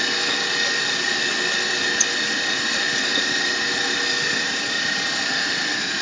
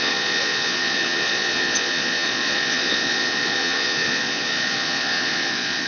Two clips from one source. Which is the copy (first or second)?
second